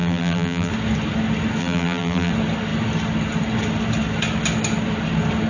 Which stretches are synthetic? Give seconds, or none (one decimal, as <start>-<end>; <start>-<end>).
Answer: 0.0-0.7; 1.6-2.3